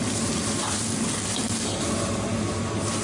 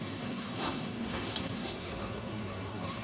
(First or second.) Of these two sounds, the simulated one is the second